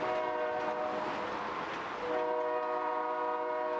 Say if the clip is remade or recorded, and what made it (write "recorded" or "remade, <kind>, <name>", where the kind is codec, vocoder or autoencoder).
recorded